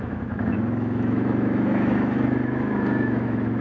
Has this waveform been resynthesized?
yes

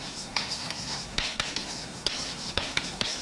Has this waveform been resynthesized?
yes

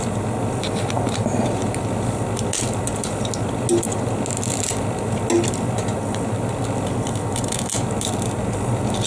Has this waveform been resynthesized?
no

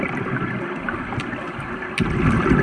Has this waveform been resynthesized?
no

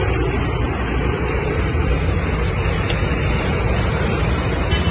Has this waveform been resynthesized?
no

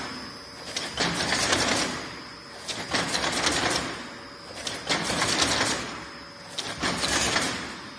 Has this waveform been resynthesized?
no